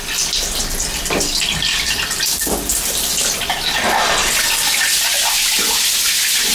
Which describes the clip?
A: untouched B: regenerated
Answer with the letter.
A